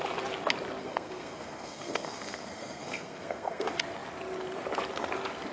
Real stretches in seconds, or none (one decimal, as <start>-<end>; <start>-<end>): 0.0-0.8; 3.6-5.5